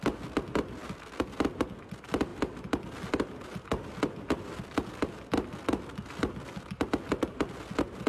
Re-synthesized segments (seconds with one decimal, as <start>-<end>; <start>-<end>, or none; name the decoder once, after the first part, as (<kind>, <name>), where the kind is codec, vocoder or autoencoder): 2.3-6.7 (vocoder, BigVGAN v2)